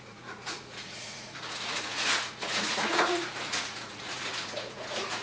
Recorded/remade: remade